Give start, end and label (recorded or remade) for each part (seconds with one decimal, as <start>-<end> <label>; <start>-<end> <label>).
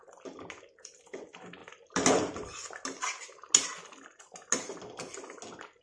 0.0-5.8 recorded